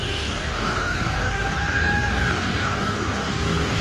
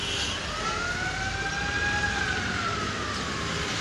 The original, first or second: second